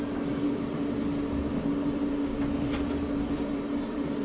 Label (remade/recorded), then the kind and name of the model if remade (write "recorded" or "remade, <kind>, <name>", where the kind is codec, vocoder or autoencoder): recorded